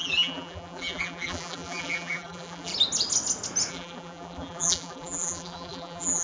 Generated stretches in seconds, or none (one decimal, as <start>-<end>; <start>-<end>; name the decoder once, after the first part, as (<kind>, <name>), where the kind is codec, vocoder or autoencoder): 0.0-2.7 (vocoder, BigVGAN v2); 3.7-6.2